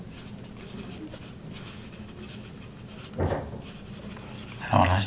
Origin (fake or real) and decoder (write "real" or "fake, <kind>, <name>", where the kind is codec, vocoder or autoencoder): real